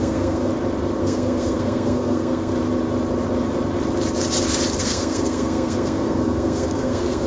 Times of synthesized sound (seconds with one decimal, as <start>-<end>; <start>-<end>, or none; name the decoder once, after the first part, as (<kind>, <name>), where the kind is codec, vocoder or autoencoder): 0.0-0.5 (codec, SNAC); 1.0-2.5; 4.8-7.3